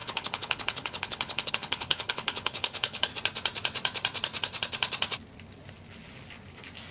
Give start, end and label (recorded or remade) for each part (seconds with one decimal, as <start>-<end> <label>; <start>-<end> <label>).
0.0-3.1 remade; 3.1-6.9 recorded